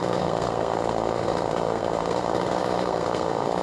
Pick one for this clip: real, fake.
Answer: fake